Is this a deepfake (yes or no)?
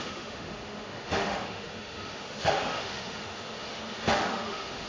yes